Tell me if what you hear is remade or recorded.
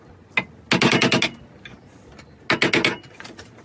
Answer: recorded